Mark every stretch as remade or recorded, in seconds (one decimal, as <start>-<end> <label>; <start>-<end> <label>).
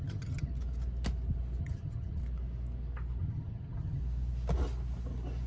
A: 0.0-0.5 remade; 0.5-1.6 recorded; 1.6-2.2 remade; 2.2-3.2 recorded; 3.2-4.0 remade; 4.0-5.5 recorded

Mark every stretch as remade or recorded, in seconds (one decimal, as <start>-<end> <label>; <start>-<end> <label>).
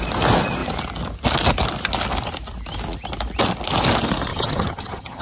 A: 0.0-4.3 recorded; 4.3-5.2 remade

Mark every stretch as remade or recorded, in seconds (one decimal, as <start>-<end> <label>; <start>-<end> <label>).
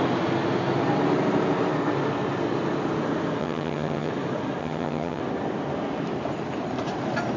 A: 0.0-3.4 recorded; 3.4-4.1 remade; 4.1-4.6 recorded; 4.6-5.2 remade; 5.2-7.4 recorded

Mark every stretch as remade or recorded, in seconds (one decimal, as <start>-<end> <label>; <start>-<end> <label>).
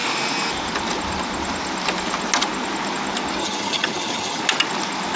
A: 0.0-3.4 recorded; 3.4-4.4 remade; 4.4-5.2 recorded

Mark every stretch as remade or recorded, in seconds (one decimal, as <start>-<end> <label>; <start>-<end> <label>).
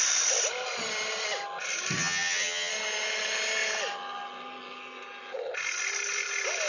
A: 0.0-2.0 recorded; 2.0-2.7 remade; 2.7-6.7 recorded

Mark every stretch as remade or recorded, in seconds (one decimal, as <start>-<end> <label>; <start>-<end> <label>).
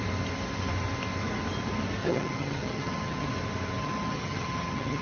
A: 0.0-2.0 recorded; 2.0-3.3 remade; 3.3-3.8 recorded; 3.8-5.0 remade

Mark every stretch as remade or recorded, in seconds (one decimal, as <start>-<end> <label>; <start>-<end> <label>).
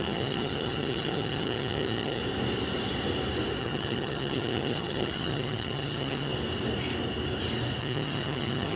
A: 0.0-2.2 remade; 2.2-3.6 recorded; 3.6-6.3 remade; 6.3-7.8 recorded; 7.8-8.8 remade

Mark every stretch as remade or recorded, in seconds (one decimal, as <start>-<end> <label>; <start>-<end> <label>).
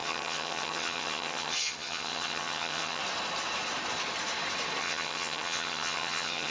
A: 0.0-3.0 remade; 3.0-4.8 recorded; 4.8-6.5 remade